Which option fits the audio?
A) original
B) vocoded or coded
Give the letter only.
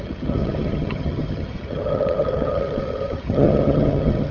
B